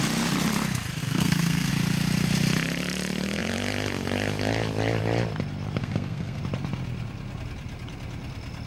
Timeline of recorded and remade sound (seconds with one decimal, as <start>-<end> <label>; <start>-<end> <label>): 0.0-1.0 recorded; 1.0-1.7 remade; 1.7-5.8 recorded; 5.8-6.4 remade; 6.4-8.7 recorded